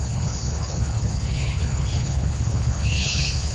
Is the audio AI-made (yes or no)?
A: yes